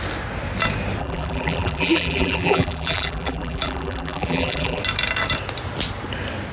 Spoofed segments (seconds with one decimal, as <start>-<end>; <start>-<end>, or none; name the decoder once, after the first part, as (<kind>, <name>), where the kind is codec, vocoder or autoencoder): 1.0-4.8 (vocoder, BigVGAN v2)